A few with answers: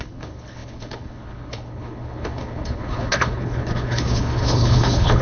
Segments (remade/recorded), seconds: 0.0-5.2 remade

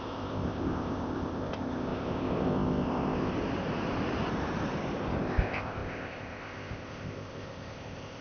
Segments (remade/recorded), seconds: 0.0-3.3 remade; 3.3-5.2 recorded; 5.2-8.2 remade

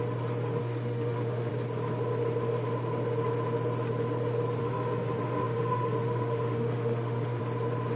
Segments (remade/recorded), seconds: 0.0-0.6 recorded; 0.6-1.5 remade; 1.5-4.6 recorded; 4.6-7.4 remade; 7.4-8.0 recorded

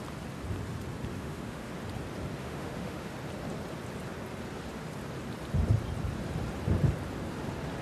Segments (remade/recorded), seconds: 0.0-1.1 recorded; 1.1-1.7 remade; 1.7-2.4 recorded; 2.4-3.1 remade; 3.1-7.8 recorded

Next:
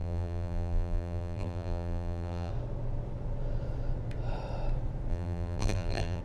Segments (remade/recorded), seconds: 0.0-2.5 remade; 2.5-5.1 recorded; 5.1-6.2 remade